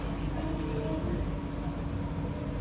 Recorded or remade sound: recorded